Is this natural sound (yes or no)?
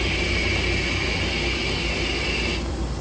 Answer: yes